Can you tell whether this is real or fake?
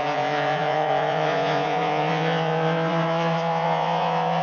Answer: fake